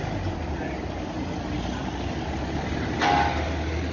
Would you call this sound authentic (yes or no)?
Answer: yes